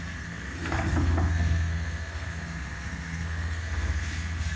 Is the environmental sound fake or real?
fake